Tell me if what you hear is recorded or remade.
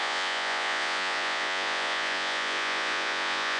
remade